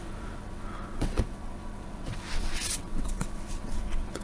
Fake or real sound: fake